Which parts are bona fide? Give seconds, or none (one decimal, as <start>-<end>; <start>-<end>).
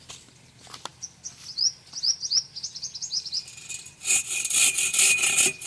0.0-5.7